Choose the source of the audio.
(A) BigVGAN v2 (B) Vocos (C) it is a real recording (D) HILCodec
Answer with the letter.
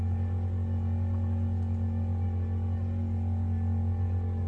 C